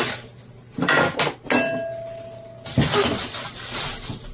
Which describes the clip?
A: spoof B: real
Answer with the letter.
B